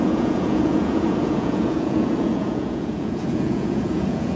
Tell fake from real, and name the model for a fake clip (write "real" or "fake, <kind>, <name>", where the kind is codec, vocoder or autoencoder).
fake, vocoder, Vocos